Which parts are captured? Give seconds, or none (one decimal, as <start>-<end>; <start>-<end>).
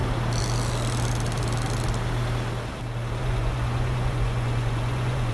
0.0-3.2